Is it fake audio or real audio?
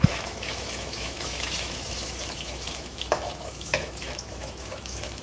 fake